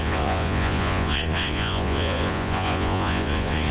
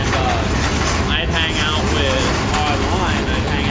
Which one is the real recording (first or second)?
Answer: second